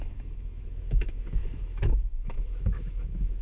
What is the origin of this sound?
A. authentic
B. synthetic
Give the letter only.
B